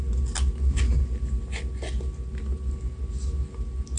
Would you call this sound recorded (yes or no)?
yes